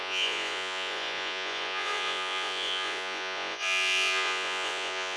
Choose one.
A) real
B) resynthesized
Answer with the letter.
B